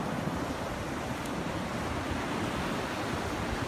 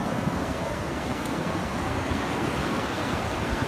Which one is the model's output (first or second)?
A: second